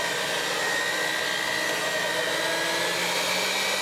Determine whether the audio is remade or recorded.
recorded